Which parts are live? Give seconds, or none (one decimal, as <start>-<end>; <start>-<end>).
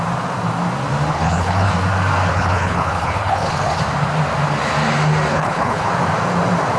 0.0-1.1; 1.7-2.3; 3.8-5.3; 5.9-6.8